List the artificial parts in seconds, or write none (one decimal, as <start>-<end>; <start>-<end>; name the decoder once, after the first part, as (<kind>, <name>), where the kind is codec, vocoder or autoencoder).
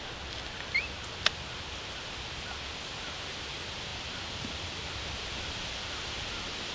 none